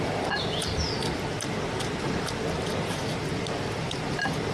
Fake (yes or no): no